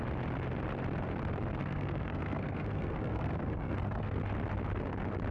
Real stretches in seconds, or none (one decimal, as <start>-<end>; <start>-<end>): 0.0-1.6; 4.2-5.3